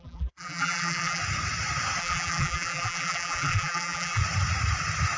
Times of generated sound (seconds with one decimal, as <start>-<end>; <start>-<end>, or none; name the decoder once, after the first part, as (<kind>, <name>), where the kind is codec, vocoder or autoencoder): 0.0-1.2 (vocoder, BigVGAN v2); 2.0-4.2